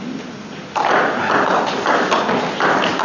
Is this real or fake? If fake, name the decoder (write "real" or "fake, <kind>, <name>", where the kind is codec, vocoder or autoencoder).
real